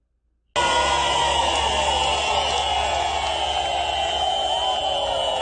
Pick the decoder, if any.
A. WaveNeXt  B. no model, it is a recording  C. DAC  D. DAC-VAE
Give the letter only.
B